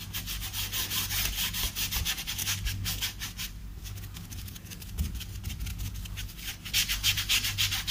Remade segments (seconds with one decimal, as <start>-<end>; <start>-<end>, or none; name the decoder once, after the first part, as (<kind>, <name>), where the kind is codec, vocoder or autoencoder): 2.4-3.0 (codec, DAC); 3.6-5.3; 5.7-6.5